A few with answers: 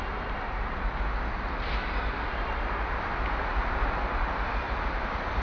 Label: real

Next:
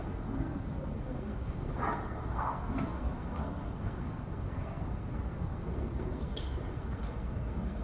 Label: fake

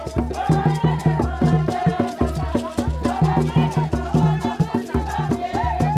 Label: real